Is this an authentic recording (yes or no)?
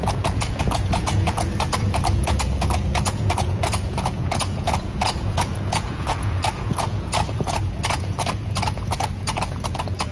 no